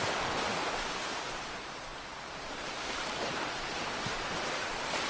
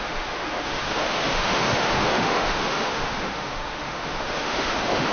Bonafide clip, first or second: first